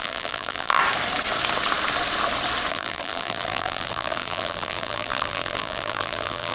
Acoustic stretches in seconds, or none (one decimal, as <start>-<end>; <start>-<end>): 0.8-2.7